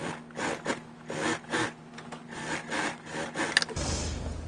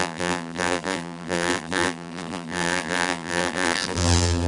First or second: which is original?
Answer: first